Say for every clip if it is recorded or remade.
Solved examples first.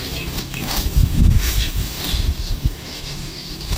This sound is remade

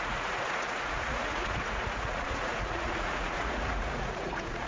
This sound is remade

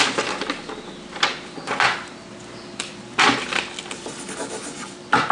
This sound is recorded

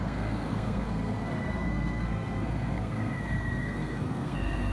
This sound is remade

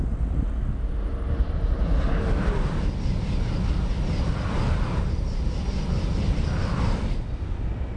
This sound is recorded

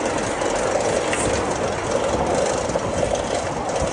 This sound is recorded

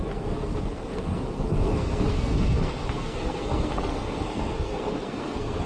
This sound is remade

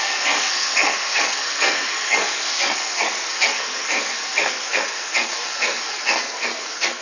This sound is remade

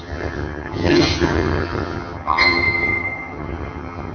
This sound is remade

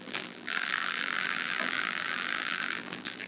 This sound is remade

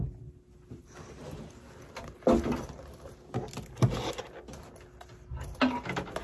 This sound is recorded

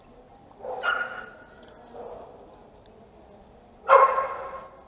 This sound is recorded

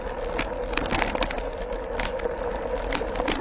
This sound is recorded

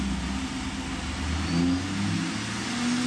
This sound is recorded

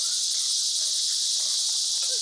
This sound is recorded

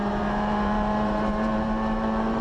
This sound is remade